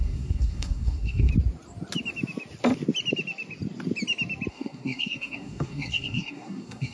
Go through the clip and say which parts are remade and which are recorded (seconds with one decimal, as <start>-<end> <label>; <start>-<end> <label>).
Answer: 0.0-1.3 remade; 1.3-4.5 recorded; 4.5-6.9 remade